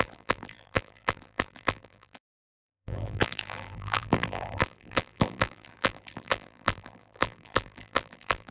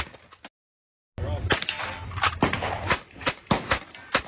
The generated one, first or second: first